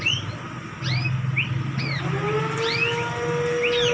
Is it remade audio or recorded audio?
recorded